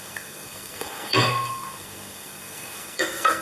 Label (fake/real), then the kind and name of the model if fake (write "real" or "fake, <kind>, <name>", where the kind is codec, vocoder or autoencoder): fake, codec, SNAC